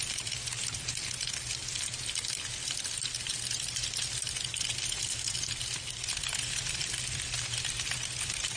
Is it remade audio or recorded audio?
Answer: recorded